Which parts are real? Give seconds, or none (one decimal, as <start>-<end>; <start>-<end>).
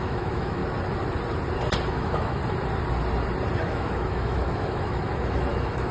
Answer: 0.6-1.9; 2.4-3.6